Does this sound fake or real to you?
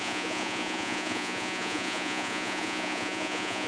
fake